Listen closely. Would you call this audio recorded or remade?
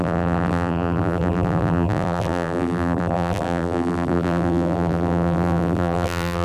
remade